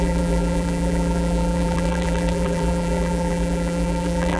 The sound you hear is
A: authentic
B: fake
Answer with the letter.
B